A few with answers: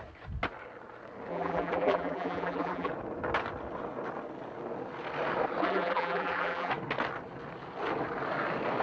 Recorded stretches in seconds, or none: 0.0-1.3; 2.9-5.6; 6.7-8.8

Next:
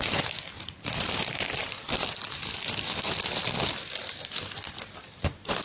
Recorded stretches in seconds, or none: 0.0-5.6